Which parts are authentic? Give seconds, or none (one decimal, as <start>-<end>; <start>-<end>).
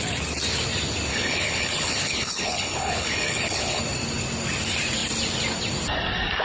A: 0.0-1.1; 3.8-6.4